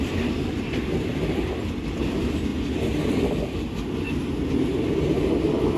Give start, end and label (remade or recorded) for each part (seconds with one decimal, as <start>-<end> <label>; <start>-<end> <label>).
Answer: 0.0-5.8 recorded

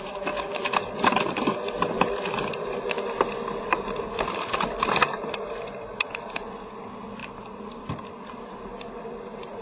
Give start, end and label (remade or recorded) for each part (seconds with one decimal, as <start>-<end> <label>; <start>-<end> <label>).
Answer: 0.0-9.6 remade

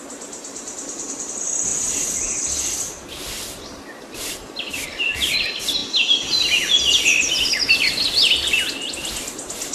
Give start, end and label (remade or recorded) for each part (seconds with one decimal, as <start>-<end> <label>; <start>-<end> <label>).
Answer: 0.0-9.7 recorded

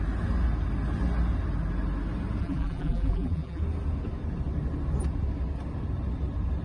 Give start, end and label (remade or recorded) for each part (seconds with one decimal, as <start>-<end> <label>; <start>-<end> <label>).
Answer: 0.0-2.4 recorded; 2.4-3.6 remade; 3.6-6.6 recorded